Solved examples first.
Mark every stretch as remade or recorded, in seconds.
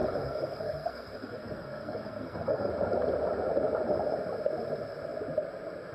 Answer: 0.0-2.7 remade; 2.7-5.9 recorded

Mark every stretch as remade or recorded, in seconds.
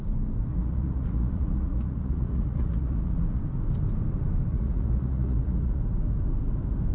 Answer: 0.0-0.5 recorded; 0.5-3.4 remade; 3.4-4.5 recorded; 4.5-5.8 remade; 5.8-6.9 recorded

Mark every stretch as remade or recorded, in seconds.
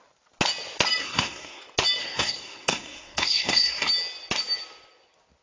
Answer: 0.0-1.0 recorded; 1.0-1.6 remade; 1.6-2.0 recorded; 2.0-3.9 remade; 3.9-5.4 recorded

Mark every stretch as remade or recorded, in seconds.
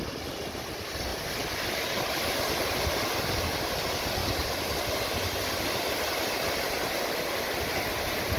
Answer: 0.0-8.4 recorded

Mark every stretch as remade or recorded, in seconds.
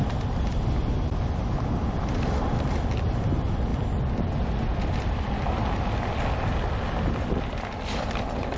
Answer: 0.0-8.6 recorded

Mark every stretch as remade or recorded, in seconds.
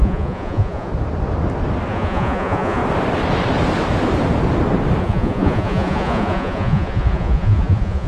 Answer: 0.0-0.9 remade; 0.9-1.9 recorded; 1.9-2.8 remade; 2.8-5.0 recorded; 5.0-8.1 remade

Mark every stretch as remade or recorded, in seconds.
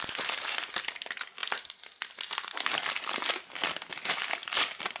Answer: 0.0-5.0 recorded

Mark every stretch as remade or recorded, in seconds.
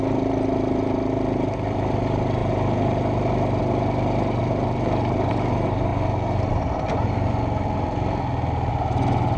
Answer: 0.0-9.4 recorded